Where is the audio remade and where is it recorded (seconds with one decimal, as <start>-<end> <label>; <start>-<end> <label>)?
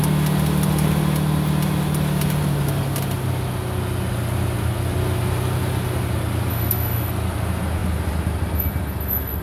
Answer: 0.0-6.5 recorded; 6.5-7.1 remade; 7.1-9.4 recorded